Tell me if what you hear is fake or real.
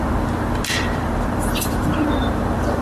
fake